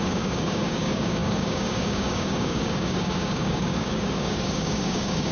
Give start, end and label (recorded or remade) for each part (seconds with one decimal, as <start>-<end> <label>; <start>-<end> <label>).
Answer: 0.0-5.3 remade

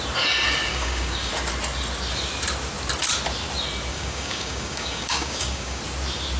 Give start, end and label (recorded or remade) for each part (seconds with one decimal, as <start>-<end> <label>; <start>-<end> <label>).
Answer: 0.0-0.7 recorded; 0.7-1.3 remade; 1.3-3.9 recorded; 3.9-5.8 remade; 5.8-6.4 recorded

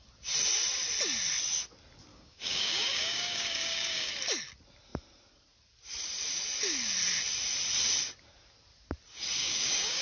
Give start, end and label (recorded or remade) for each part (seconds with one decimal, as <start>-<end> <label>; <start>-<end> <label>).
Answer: 0.0-2.1 recorded; 2.1-4.1 remade; 4.1-9.4 recorded; 9.4-10.0 remade

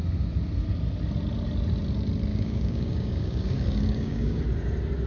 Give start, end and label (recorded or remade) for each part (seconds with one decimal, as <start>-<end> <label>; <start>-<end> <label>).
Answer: 0.0-2.3 recorded; 2.3-4.4 remade; 4.4-5.1 recorded

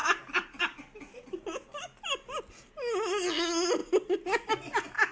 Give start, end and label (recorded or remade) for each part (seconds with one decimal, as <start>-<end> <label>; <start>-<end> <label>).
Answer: 0.0-1.4 remade; 1.4-5.1 recorded

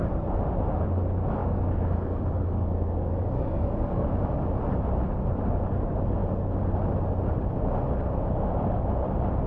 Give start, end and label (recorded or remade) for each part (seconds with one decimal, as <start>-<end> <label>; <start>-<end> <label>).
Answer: 0.0-1.4 recorded; 1.4-4.1 remade; 4.1-9.5 recorded

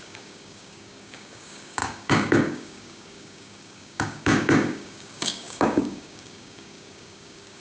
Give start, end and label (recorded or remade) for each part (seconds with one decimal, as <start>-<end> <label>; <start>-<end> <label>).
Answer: 0.0-7.6 remade

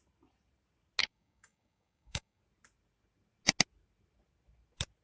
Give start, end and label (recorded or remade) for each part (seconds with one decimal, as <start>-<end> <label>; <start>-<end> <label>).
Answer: 0.0-1.0 recorded; 1.0-2.4 remade; 2.4-5.0 recorded